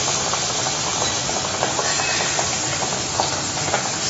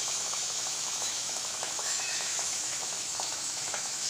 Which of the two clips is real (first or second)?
first